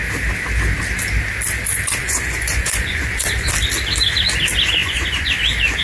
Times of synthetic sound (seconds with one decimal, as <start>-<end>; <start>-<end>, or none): 2.0-3.5; 4.8-5.3